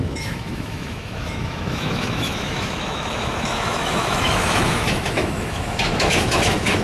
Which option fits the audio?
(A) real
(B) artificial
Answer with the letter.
B